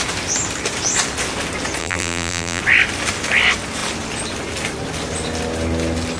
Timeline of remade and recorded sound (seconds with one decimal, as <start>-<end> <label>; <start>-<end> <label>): 0.0-1.8 recorded; 1.8-2.6 remade; 2.6-6.2 recorded